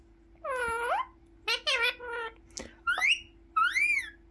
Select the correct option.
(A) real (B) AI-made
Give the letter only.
A